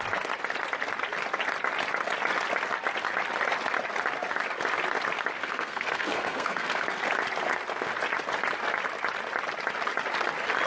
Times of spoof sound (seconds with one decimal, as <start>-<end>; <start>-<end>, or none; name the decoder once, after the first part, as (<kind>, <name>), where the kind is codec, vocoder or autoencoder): 5.4-7.0 (codec, SNAC)